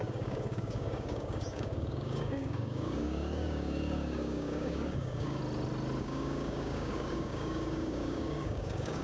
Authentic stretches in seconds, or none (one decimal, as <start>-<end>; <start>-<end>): 5.4-6.0